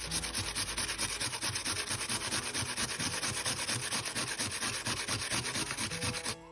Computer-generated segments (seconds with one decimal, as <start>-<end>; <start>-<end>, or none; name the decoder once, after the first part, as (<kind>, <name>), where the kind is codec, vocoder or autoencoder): none